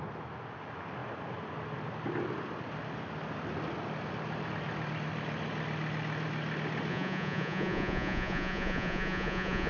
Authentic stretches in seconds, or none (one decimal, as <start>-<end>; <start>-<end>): 0.0-6.9